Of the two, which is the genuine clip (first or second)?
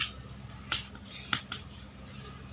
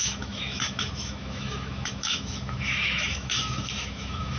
first